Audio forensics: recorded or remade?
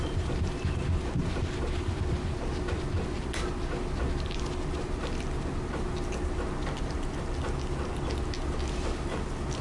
recorded